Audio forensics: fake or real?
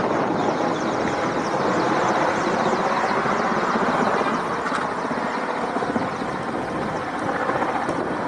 real